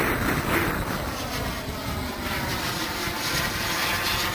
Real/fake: real